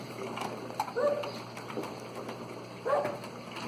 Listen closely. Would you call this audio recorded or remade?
recorded